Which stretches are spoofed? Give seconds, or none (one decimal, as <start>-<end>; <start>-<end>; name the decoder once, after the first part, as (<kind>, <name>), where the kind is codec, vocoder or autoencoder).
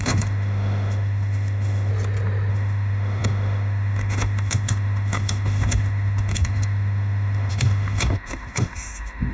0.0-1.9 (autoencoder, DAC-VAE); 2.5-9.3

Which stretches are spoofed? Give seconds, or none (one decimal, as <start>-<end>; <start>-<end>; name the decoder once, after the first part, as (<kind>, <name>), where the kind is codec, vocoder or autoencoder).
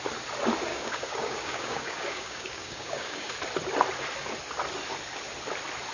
0.7-3.3 (codec, DAC)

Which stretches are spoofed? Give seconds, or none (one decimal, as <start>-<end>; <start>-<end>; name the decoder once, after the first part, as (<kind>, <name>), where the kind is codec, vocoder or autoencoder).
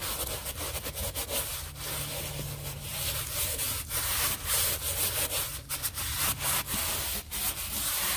2.9-6.0 (vocoder, BigVGAN v2)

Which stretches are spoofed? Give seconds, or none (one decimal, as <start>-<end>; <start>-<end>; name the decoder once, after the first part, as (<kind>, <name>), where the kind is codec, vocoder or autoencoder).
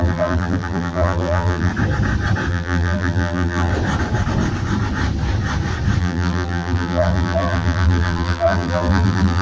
0.0-1.7 (vocoder, BigVGAN v2); 2.5-3.7; 6.0-9.4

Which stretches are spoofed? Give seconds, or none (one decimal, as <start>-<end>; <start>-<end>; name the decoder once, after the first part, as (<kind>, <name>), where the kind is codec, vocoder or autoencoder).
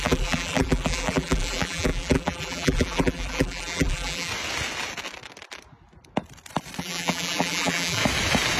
0.0-4.3 (vocoder, BigVGAN v2); 6.8-8.0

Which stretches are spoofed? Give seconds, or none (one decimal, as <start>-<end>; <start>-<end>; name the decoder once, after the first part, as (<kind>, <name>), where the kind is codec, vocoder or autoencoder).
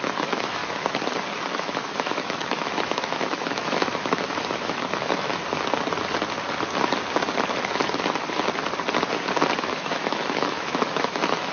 0.0-0.6 (autoencoder, DAC-VAE); 1.5-5.4; 9.6-11.5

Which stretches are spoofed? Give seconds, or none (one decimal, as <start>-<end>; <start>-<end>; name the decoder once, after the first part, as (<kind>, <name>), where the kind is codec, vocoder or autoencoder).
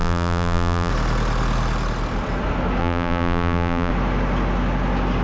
0.0-0.9 (vocoder, BigVGAN v2); 2.8-3.9